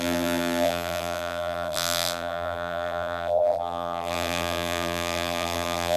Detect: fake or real fake